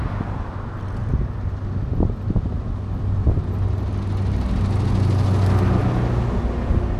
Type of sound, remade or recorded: recorded